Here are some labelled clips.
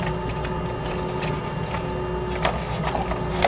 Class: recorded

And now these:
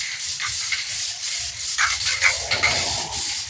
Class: recorded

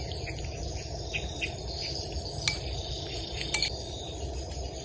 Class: recorded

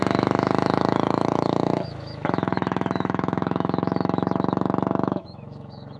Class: remade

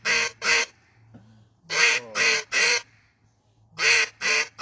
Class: recorded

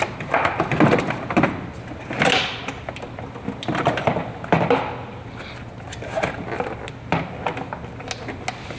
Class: recorded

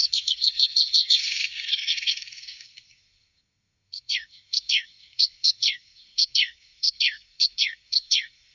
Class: remade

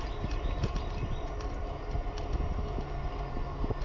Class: recorded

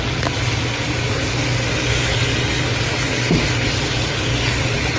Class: recorded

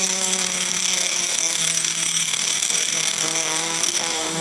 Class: remade